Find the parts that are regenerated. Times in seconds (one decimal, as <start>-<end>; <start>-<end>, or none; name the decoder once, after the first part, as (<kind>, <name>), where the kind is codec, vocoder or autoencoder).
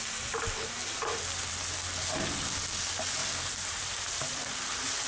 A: 3.2-4.4 (vocoder, BigVGAN v2)